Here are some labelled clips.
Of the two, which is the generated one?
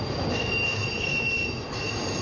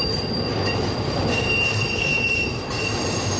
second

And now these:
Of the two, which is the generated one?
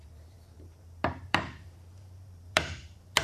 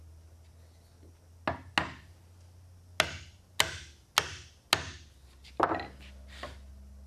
first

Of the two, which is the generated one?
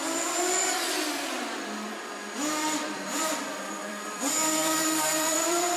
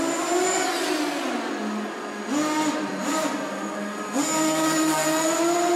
first